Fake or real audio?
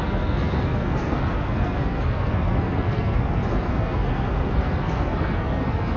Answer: fake